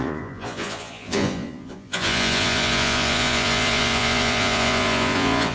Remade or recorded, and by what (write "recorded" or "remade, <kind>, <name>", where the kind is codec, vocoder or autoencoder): remade, vocoder, Vocos